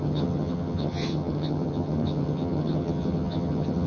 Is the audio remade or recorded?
remade